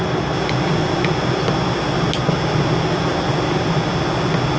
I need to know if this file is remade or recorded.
recorded